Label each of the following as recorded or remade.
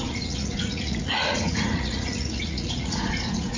remade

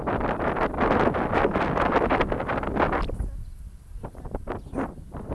recorded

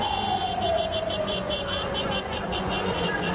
remade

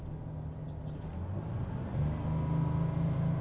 recorded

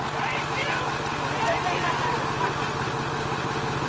recorded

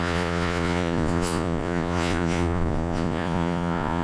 remade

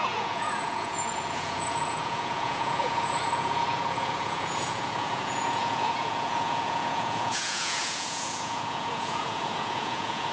remade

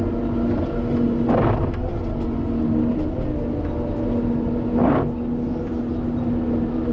recorded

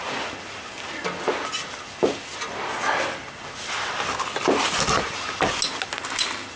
recorded